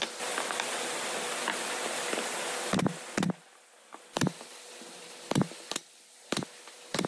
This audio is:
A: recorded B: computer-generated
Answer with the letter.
A